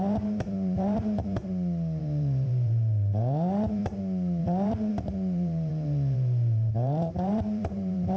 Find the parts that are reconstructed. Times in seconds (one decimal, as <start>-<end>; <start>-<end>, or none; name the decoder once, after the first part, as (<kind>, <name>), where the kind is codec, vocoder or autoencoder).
0.0-1.4 (vocoder, BigVGAN v2); 2.0-3.8; 4.4-8.2